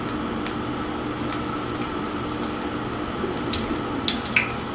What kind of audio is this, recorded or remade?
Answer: recorded